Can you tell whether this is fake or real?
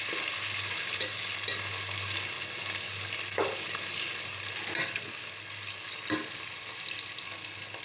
real